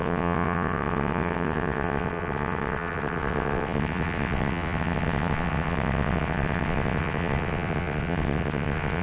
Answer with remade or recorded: remade